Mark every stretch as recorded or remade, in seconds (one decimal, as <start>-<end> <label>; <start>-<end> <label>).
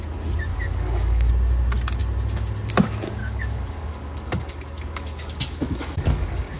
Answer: 0.0-0.5 recorded; 0.5-1.3 remade; 1.3-3.2 recorded; 3.2-6.6 remade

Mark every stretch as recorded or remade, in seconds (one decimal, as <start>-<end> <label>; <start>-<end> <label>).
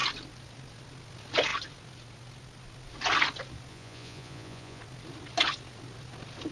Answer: 0.0-3.7 recorded; 3.7-4.8 remade; 4.8-6.5 recorded